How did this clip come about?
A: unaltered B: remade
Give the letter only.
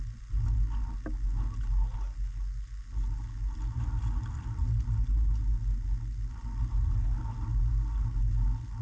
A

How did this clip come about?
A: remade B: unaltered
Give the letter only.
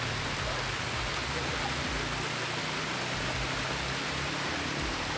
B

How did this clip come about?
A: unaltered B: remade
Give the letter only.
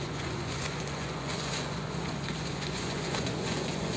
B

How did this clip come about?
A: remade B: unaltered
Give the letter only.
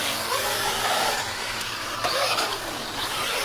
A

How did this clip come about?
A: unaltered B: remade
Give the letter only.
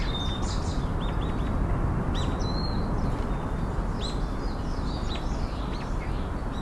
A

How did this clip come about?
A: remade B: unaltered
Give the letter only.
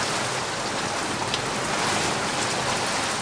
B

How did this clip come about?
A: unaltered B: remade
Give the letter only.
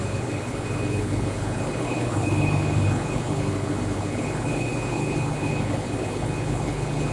B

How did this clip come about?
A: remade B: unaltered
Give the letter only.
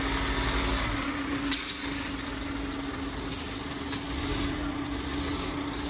B